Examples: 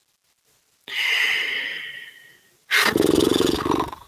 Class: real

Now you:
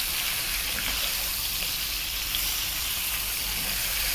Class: fake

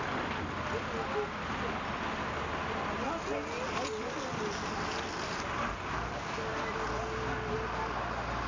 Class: real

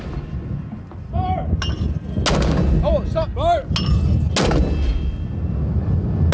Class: real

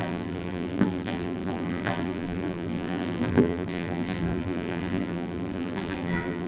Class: fake